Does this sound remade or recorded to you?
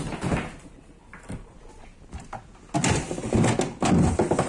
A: recorded